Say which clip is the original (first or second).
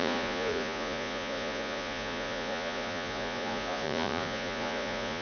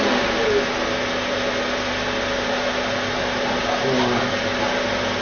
second